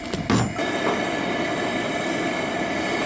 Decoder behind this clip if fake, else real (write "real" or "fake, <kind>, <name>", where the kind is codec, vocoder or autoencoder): real